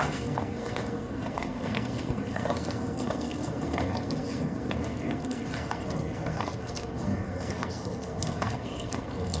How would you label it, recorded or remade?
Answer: remade